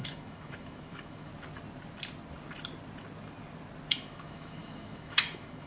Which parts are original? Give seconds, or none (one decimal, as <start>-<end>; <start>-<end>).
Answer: 1.3-3.9